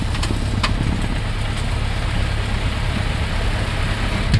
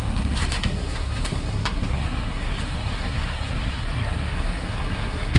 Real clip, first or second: first